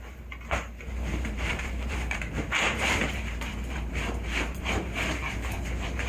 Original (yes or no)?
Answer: no